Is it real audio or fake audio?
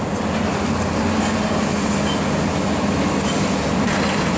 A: real